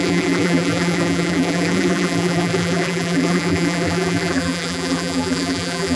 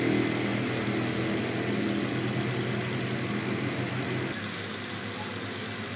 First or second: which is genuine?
second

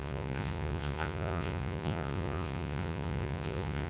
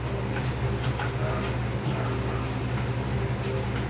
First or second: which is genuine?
second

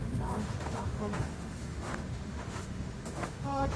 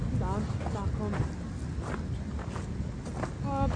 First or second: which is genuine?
second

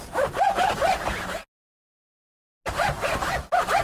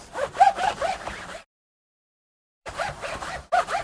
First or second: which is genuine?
first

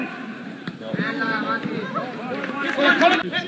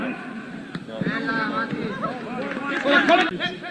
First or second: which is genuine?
second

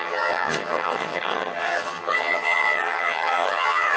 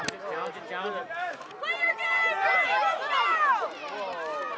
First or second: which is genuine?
second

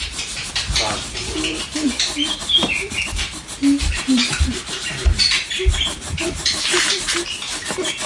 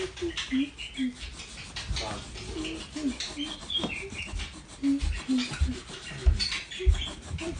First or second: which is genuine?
second